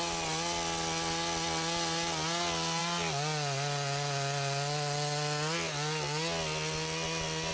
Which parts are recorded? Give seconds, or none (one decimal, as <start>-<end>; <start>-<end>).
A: 0.0-7.5